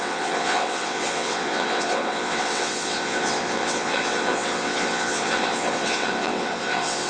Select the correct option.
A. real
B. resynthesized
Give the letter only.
B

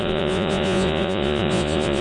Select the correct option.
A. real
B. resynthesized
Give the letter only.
B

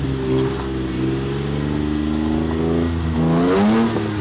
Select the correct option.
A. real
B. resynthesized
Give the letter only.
A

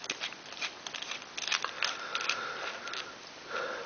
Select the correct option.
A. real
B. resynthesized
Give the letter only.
A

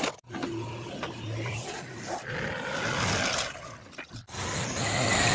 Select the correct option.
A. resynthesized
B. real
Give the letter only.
B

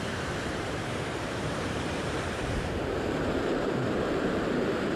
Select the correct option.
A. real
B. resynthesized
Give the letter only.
B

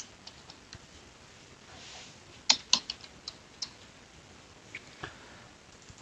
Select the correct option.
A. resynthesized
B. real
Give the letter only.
B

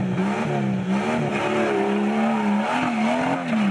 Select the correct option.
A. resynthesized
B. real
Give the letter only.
B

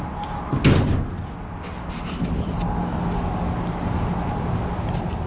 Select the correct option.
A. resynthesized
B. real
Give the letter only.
B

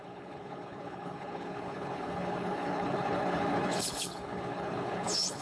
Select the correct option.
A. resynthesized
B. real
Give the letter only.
A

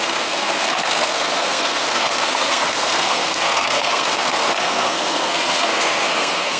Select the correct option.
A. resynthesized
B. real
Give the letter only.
A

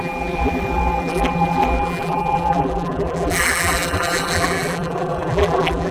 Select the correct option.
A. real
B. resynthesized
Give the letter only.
B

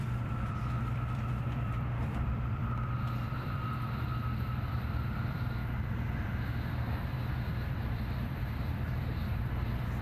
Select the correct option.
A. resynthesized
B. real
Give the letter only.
A